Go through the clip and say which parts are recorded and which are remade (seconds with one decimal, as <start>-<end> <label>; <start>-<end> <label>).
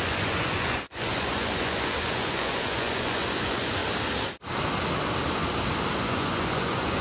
0.0-3.8 remade; 3.8-6.0 recorded; 6.0-7.0 remade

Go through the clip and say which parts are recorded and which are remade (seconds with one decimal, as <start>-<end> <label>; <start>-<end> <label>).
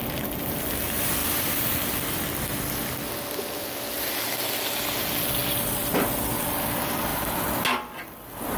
0.0-7.1 recorded; 7.1-7.6 remade; 7.6-8.6 recorded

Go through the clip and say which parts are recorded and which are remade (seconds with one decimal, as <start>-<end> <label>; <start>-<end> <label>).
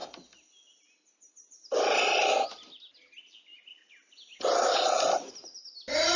0.0-6.2 recorded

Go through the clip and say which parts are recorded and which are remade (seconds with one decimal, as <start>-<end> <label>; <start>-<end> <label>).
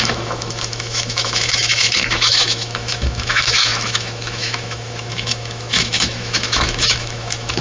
0.0-7.6 remade